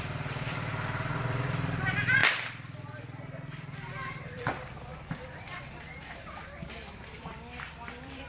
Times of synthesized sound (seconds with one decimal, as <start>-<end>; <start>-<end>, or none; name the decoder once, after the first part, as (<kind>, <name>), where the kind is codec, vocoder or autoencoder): 0.0-0.7 (vocoder, BigVGAN v2); 1.2-2.2; 3.9-4.9; 6.2-8.3